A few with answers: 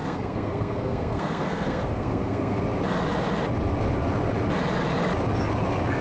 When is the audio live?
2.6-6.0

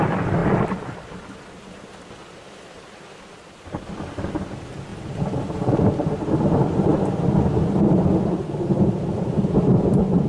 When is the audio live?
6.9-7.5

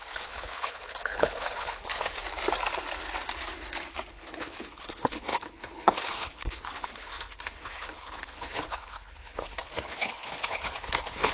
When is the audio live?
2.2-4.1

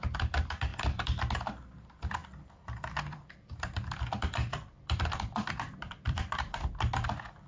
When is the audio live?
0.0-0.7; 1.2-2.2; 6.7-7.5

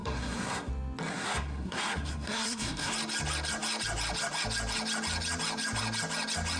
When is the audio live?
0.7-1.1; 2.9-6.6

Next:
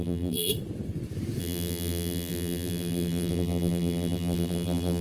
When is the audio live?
0.5-1.4

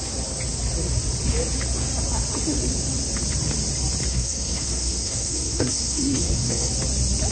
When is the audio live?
0.0-4.1; 6.7-7.3

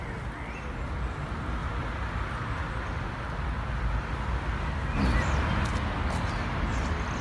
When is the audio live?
0.0-7.2